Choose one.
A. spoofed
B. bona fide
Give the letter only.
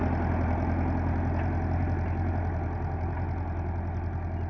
A